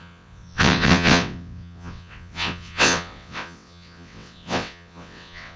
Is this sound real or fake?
fake